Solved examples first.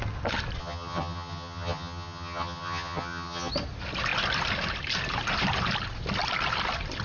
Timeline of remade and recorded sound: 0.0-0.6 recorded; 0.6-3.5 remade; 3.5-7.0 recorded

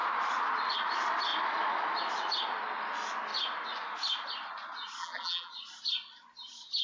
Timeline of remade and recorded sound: 0.0-5.0 recorded; 5.0-5.5 remade; 5.5-6.8 recorded

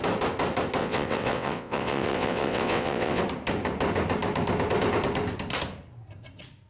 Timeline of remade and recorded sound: 0.0-0.8 recorded; 0.8-3.2 remade; 3.2-6.7 recorded

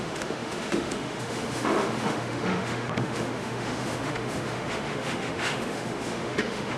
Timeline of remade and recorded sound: 0.0-6.8 remade